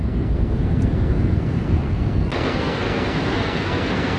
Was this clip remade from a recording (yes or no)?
yes